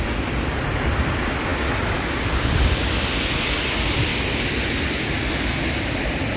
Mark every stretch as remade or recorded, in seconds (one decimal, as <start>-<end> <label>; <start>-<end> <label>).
0.0-6.4 recorded

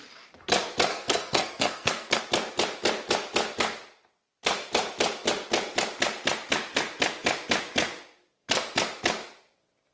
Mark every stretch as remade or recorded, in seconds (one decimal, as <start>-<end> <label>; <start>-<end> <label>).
0.0-0.9 recorded; 0.9-2.2 remade; 2.2-9.9 recorded

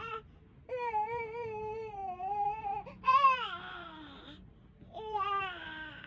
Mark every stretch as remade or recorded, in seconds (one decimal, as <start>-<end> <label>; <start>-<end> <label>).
0.0-6.1 recorded